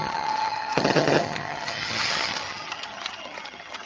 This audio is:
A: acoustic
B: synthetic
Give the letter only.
B